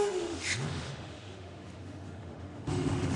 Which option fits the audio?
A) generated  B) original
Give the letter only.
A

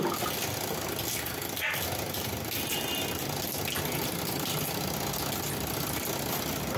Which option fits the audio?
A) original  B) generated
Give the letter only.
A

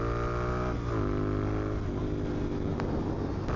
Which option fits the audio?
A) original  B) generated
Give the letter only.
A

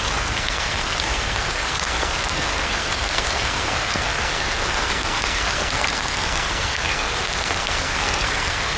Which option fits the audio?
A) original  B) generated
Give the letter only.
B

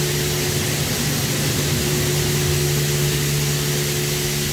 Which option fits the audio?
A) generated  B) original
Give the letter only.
B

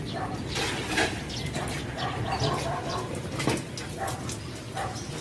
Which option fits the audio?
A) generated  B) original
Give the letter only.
B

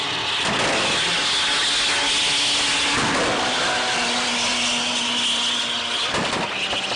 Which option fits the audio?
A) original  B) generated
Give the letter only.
A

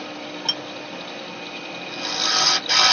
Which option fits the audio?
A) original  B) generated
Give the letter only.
A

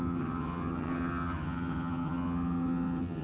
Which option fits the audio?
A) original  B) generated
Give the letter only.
B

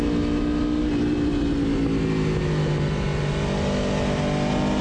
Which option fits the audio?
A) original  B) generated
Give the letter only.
A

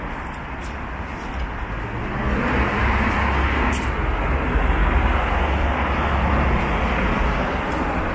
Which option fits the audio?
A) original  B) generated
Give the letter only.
A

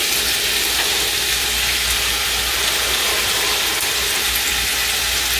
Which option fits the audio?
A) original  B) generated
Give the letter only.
A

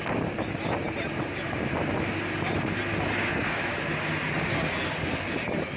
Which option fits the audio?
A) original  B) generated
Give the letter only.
A